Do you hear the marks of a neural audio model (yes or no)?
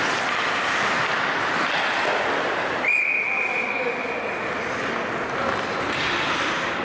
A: no